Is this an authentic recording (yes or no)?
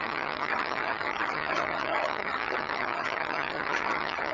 no